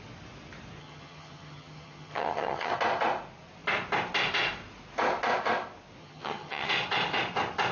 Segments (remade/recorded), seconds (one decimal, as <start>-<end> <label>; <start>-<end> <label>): 0.0-0.8 recorded; 0.8-2.7 remade; 2.7-6.0 recorded; 6.0-6.7 remade; 6.7-7.7 recorded